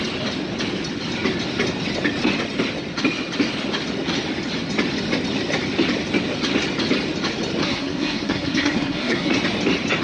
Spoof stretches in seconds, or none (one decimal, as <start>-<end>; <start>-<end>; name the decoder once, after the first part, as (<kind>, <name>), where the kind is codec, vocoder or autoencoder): 7.6-9.3 (codec, SNAC)